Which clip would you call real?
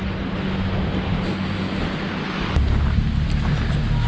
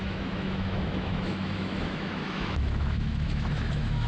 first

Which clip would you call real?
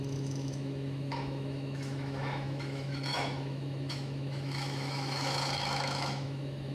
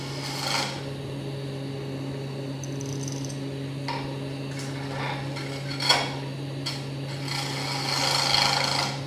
second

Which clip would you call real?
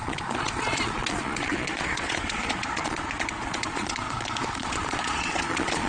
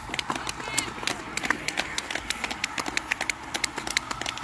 second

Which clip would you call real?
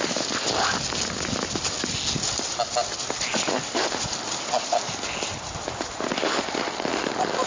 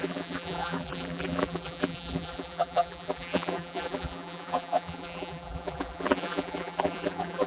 first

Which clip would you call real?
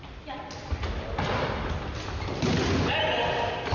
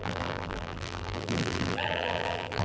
first